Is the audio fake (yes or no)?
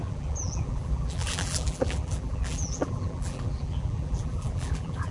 yes